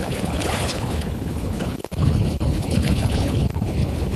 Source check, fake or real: fake